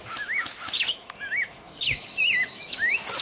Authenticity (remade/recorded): remade